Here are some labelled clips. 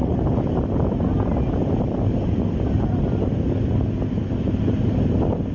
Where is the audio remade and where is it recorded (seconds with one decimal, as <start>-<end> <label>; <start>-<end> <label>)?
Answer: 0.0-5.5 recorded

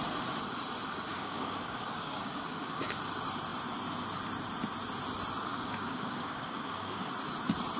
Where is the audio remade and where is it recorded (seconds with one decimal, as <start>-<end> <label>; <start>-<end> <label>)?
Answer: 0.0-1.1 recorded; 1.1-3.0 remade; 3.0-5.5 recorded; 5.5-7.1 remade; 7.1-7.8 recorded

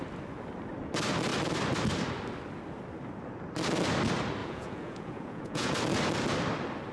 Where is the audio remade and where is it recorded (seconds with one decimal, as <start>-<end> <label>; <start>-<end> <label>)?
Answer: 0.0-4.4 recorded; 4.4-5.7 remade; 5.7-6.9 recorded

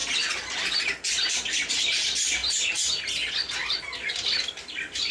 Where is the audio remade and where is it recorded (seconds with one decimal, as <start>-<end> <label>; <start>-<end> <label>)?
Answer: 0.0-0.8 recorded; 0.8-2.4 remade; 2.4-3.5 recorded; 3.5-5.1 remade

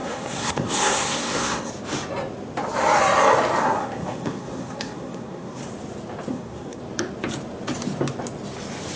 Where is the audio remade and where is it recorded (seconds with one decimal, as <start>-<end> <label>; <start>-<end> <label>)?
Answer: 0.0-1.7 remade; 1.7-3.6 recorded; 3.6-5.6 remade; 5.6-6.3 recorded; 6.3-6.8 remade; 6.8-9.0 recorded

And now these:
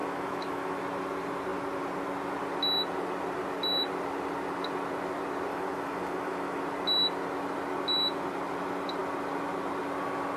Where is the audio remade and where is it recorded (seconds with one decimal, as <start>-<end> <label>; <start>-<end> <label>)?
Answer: 0.0-0.8 remade; 0.8-5.5 recorded; 5.5-6.6 remade; 6.6-10.4 recorded

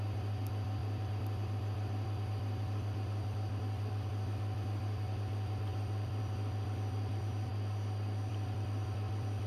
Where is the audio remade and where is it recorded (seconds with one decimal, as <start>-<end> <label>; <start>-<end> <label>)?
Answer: 0.0-7.5 remade; 7.5-8.3 recorded; 8.3-9.5 remade